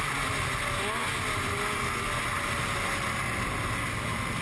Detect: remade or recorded recorded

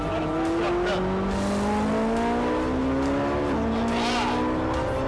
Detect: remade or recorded recorded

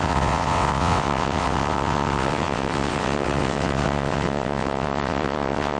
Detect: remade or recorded remade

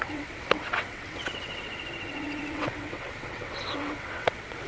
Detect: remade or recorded remade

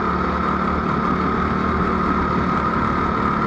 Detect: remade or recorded recorded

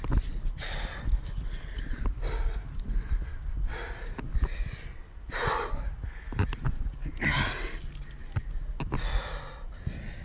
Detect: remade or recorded recorded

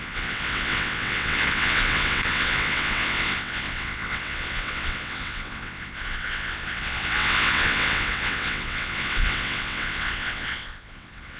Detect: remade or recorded remade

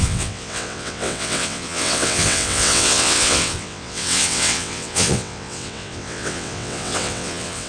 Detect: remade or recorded remade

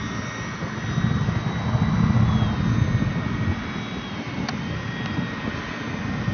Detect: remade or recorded recorded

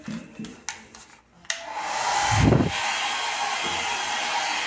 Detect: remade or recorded recorded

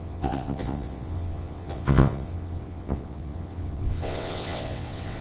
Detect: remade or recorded remade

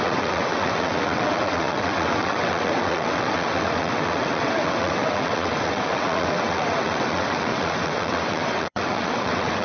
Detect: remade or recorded remade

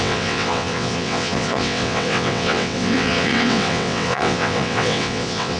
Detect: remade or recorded remade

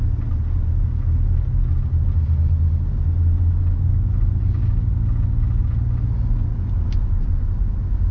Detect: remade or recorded recorded